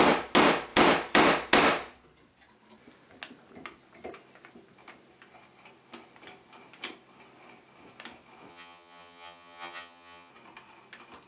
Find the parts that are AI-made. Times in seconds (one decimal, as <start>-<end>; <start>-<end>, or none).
8.5-10.3